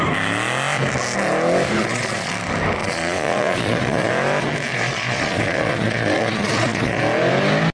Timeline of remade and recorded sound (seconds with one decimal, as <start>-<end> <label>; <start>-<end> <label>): 0.0-1.8 recorded; 1.8-2.3 remade; 2.3-2.8 recorded; 2.8-4.1 remade; 4.1-4.7 recorded; 4.7-7.0 remade; 7.0-7.7 recorded